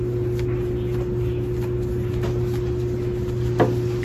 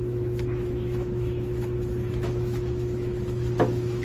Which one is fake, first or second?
second